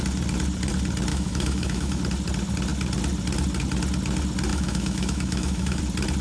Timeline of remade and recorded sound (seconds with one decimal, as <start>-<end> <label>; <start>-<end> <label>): 0.0-1.1 recorded; 1.1-2.0 remade; 2.0-4.5 recorded; 4.5-5.8 remade; 5.8-6.2 recorded